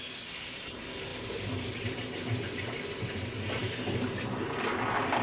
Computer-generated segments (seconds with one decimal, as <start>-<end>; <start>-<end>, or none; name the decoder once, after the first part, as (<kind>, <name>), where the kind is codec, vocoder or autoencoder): none